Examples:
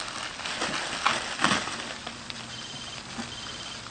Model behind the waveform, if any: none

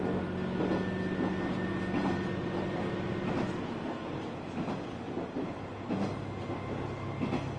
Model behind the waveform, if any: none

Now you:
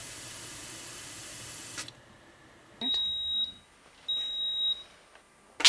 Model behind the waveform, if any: none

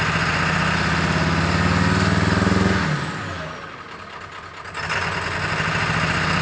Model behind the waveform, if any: none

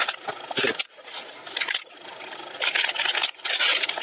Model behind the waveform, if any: none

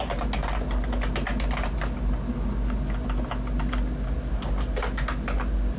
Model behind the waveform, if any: none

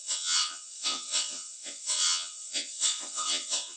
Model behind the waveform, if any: vocoder, WaveNeXt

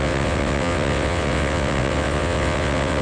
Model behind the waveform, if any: vocoder, WaveNeXt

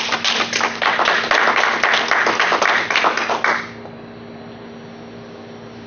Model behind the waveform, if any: none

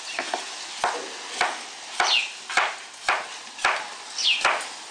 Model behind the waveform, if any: none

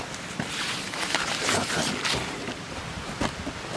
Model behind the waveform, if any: none